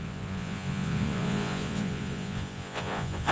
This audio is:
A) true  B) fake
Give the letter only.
B